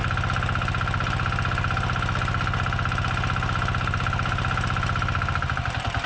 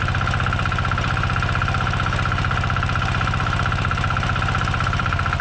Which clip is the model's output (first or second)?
second